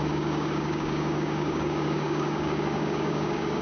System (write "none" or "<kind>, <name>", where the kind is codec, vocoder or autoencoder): codec, DAC